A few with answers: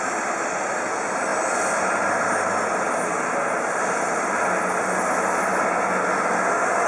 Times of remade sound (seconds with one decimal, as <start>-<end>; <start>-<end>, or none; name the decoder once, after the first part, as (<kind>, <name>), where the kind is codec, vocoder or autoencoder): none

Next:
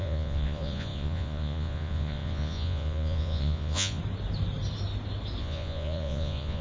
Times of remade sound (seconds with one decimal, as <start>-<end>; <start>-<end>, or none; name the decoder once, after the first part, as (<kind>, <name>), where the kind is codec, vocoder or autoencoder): 0.0-4.0 (vocoder, Vocos); 5.4-6.6

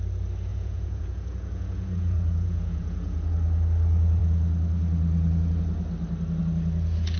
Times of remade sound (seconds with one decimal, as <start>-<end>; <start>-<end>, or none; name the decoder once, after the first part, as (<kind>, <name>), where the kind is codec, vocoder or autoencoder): 0.5-3.3 (vocoder, Vocos)

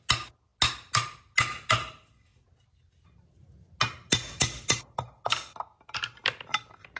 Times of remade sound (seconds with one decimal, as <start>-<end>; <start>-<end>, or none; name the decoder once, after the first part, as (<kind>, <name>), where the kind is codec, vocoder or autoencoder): none

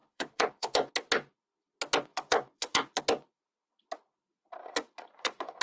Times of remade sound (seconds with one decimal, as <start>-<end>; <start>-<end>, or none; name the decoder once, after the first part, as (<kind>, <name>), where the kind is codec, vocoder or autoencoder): 0.0-0.9 (vocoder, Vocos); 2.1-3.0; 4.6-5.6

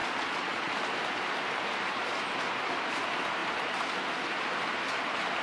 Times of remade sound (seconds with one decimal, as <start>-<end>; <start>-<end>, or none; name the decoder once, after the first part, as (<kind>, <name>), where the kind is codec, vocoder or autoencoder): 0.0-0.7 (vocoder, Vocos)

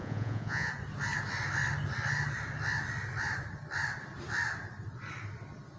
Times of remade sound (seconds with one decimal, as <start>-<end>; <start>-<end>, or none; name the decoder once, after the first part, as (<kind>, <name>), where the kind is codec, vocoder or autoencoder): 0.0-0.7 (vocoder, Vocos)